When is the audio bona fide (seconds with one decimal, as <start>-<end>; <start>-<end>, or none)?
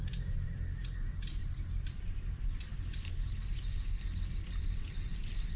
0.0-5.6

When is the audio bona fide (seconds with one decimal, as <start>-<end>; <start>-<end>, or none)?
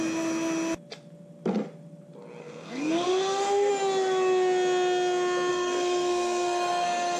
0.0-2.4; 3.7-5.5